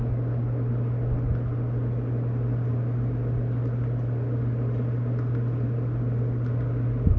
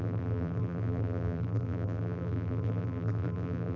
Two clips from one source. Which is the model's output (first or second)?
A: second